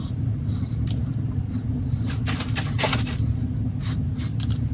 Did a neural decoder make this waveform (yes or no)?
no